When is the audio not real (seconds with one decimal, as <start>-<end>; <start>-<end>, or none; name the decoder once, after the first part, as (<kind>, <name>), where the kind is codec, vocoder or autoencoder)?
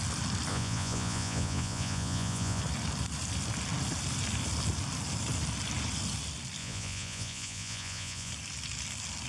0.5-2.6 (vocoder, Vocos); 6.6-8.3